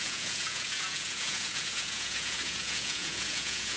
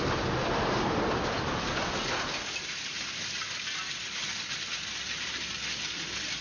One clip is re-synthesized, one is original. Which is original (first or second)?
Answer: second